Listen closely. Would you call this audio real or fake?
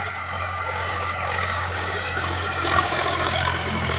fake